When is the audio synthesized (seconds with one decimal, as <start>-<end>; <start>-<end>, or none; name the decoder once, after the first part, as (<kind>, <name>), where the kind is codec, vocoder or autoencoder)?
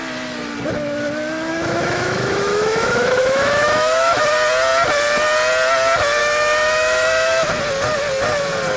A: 1.5-4.2 (autoencoder, DAC-VAE); 6.2-7.6